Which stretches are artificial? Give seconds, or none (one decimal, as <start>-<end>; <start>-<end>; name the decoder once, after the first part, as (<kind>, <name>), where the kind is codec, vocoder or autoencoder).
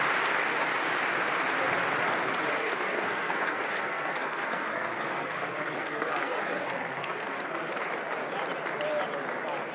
2.6-7.7 (codec, SNAC)